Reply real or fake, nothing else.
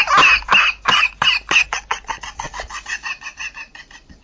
real